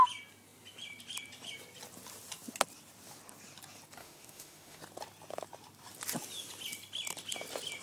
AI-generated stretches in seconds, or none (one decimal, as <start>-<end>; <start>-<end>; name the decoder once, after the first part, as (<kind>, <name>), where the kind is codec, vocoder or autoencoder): 4.0-4.8 (autoencoder, DAC-VAE)

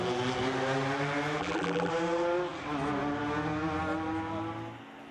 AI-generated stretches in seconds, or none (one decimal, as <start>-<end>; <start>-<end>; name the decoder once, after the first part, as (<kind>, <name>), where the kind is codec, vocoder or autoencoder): 1.4-1.9 (vocoder, BigVGAN v2)

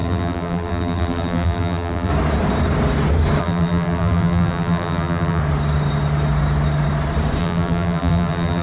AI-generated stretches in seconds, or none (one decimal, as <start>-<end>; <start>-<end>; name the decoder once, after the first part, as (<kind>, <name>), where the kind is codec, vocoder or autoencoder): 0.0-2.1 (vocoder, BigVGAN v2); 3.4-5.4; 7.4-8.6

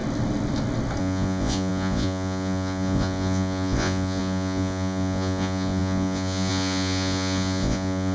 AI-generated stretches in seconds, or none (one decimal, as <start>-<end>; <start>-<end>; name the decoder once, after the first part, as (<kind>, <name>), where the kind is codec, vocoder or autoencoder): 1.0-8.1 (vocoder, Vocos)

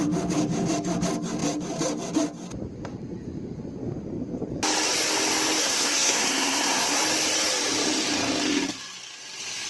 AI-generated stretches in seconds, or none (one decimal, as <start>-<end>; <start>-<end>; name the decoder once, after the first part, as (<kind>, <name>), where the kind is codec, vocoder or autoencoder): 5.6-7.0 (codec, SNAC)

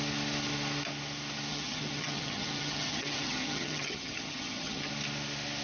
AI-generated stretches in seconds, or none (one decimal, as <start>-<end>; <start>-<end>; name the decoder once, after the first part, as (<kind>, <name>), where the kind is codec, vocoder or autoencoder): 1.5-4.9 (vocoder, HiFi-GAN)